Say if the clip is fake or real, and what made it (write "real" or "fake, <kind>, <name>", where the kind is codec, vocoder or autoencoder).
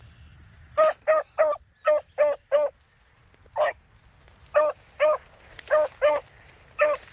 real